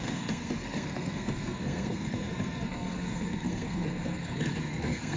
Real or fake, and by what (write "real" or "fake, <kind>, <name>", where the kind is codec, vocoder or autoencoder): fake, codec, SNAC